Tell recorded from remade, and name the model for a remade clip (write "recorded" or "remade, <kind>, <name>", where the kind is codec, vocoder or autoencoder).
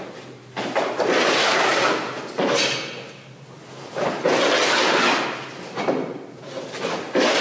recorded